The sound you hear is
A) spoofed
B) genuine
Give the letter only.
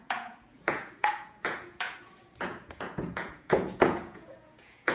A